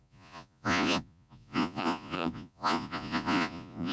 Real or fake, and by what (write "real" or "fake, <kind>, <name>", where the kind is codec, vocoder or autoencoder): fake, vocoder, Vocos